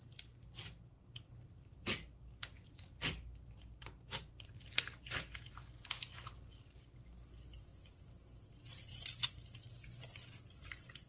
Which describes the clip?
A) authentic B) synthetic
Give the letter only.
A